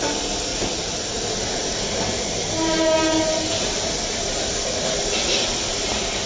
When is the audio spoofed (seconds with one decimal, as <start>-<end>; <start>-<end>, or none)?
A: none